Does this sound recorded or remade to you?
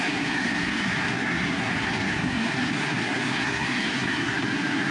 remade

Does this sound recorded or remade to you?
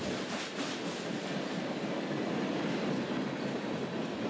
recorded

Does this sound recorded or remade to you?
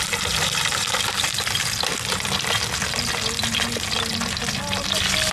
recorded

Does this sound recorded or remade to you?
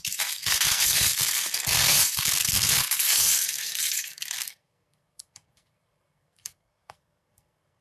remade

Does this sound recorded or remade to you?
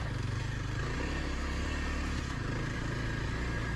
recorded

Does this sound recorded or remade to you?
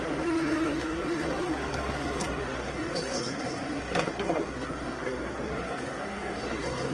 remade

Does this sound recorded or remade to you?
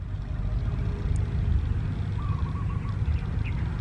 recorded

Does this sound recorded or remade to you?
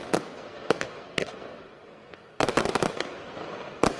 remade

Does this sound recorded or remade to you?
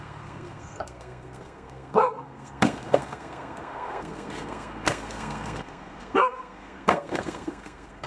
remade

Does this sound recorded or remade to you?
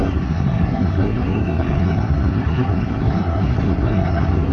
remade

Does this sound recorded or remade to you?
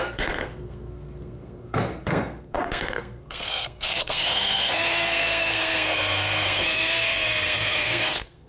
remade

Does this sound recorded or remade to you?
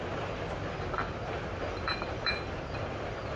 recorded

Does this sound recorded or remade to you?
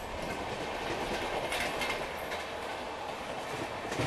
recorded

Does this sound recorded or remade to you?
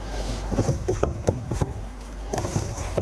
remade